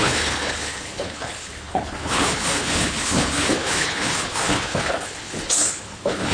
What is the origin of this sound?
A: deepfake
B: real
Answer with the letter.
A